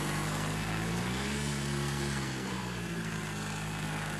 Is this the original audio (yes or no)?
no